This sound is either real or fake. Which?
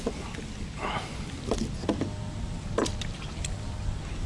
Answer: real